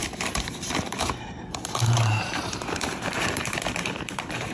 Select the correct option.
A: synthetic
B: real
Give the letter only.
A